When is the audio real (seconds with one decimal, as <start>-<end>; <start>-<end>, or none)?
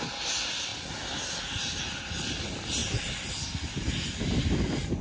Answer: 0.0-0.7; 1.4-2.8; 3.3-5.0